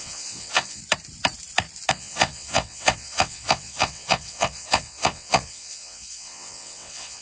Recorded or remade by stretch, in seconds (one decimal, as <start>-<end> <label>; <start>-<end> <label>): 0.0-0.8 remade; 0.8-1.9 recorded; 1.9-7.2 remade

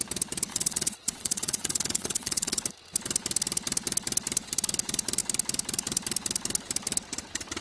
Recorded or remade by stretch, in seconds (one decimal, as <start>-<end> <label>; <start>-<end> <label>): 0.0-0.5 recorded; 0.5-2.6 remade; 2.6-7.6 recorded

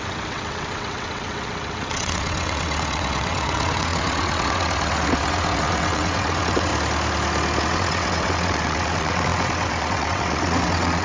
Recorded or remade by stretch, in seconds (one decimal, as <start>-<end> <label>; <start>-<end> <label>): 0.0-6.7 remade; 6.7-7.6 recorded; 7.6-11.0 remade

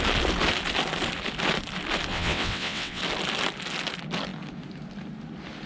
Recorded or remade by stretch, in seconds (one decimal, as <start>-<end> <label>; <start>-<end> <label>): 0.0-2.1 recorded; 2.1-3.0 remade; 3.0-5.7 recorded

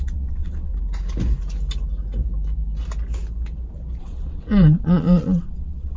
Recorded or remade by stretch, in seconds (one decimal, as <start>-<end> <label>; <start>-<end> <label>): 0.0-0.7 remade; 0.7-4.0 recorded; 4.0-6.0 remade

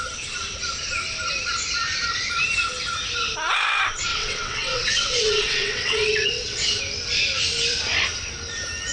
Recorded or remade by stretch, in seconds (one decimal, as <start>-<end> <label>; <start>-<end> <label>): 0.0-4.1 recorded; 4.1-6.8 remade; 6.8-8.9 recorded

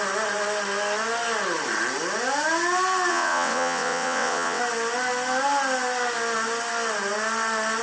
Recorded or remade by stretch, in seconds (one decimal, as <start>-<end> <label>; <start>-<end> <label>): 0.0-3.1 recorded; 3.1-4.6 remade; 4.6-7.8 recorded

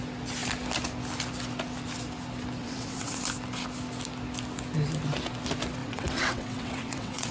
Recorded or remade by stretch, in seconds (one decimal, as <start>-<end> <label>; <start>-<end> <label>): 0.0-2.6 recorded; 2.6-3.2 remade; 3.2-5.8 recorded; 5.8-7.3 remade